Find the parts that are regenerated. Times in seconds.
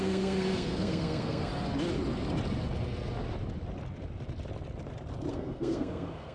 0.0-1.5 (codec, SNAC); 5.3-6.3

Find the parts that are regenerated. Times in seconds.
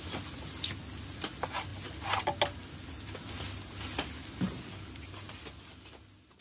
none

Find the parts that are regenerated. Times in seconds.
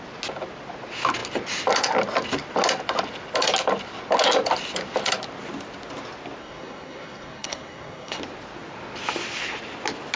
6.4-8.2 (codec, SNAC)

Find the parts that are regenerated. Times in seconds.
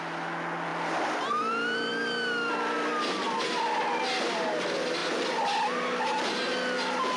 none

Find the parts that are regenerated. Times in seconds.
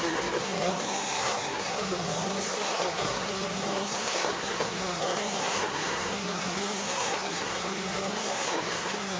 0.0-9.2 (codec, SNAC)